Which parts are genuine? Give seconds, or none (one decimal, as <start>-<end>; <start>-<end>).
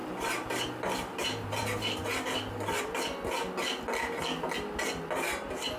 2.1-5.8